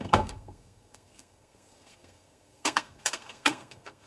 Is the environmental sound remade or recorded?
remade